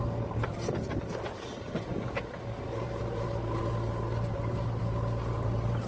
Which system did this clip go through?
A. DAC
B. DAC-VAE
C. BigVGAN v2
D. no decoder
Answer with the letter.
D